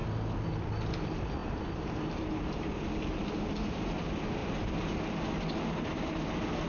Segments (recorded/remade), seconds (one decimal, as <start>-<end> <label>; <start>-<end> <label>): 0.0-1.4 recorded; 1.4-2.7 remade; 2.7-6.7 recorded